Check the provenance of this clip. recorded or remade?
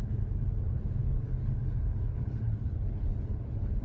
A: remade